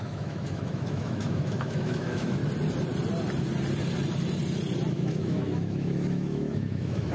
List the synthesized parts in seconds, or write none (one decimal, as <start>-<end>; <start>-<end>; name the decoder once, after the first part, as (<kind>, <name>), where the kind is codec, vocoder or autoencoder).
0.0-2.4 (autoencoder, DAC-VAE); 4.9-7.1